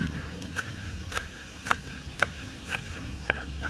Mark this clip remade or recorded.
remade